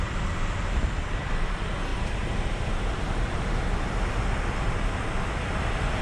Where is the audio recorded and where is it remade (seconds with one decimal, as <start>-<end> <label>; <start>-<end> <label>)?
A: 0.0-1.9 recorded; 1.9-3.4 remade; 3.4-6.0 recorded